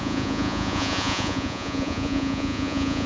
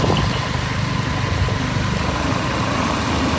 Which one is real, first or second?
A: second